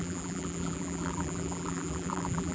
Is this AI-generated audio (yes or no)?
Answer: yes